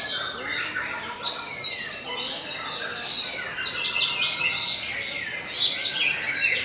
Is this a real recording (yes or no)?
yes